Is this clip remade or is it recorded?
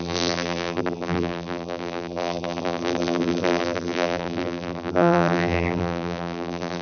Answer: remade